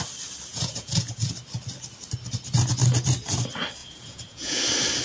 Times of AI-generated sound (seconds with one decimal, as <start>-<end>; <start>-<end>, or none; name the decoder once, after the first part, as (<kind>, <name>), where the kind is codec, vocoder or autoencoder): 0.5-1.3 (vocoder, Vocos); 3.8-4.6

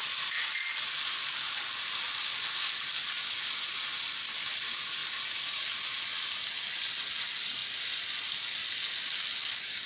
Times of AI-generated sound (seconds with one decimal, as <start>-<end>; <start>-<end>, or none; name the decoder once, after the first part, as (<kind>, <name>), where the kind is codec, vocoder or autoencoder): none

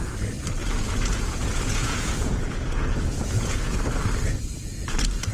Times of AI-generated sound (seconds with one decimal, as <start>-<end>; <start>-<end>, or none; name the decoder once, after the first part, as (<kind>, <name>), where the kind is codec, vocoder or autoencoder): 0.6-3.8 (vocoder, Vocos)

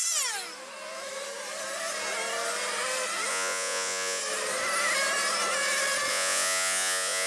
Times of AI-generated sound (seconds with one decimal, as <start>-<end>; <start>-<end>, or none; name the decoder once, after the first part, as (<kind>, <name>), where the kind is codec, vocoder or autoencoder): 3.3-4.2 (vocoder, Vocos); 6.1-7.3

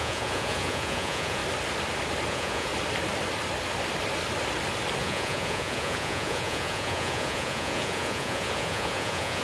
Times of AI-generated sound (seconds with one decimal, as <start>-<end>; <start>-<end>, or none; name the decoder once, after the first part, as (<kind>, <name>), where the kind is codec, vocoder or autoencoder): 0.0-1.4 (vocoder, Vocos); 2.3-2.7; 5.0-9.4